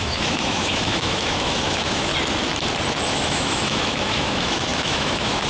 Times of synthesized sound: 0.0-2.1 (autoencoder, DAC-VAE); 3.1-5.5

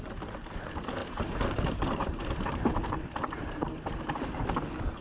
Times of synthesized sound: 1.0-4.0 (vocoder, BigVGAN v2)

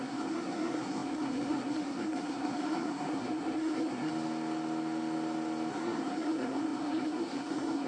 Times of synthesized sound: 0.0-4.1 (codec, SNAC); 5.7-7.9